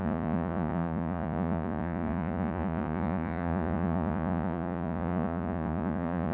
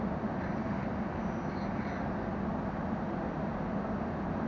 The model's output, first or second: first